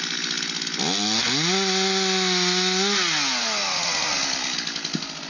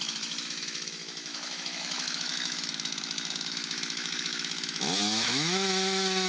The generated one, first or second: second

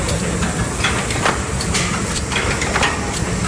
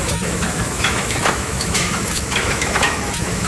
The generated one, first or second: second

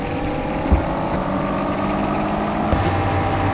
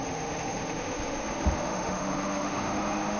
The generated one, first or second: second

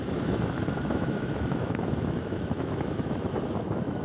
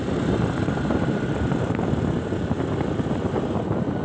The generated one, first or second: first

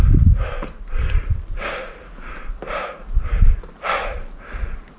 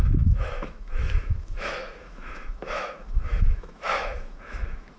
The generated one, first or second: second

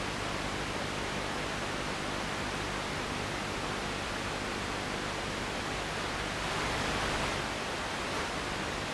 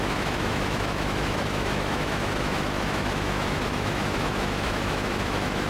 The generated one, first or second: second